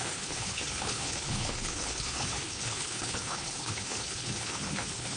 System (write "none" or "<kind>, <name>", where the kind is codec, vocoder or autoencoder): codec, HILCodec